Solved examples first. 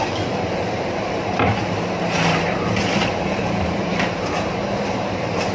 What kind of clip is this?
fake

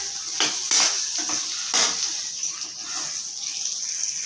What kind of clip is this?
real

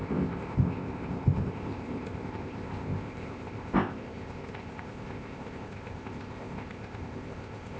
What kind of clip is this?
fake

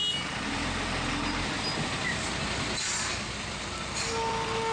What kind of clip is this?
real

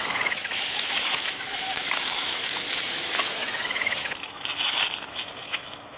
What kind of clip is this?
fake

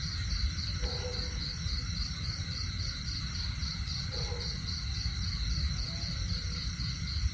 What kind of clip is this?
real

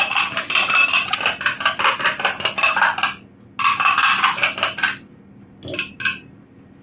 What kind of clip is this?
real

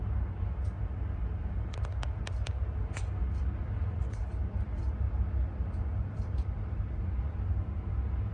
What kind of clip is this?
real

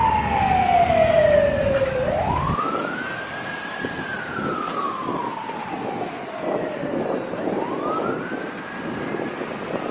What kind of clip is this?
real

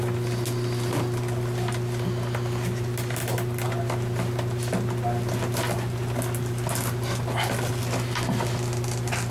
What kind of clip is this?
real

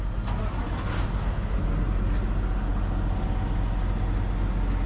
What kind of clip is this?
real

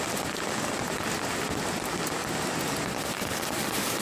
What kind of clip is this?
real